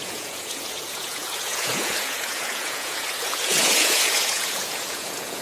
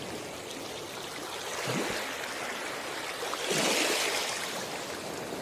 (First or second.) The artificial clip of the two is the first